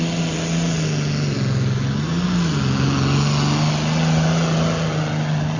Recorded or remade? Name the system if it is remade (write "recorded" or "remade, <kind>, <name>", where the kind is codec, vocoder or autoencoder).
recorded